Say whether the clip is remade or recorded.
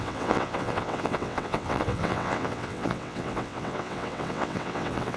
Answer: remade